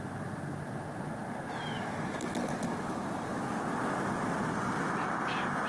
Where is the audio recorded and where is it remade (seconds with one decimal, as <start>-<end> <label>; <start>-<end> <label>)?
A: 0.0-5.7 recorded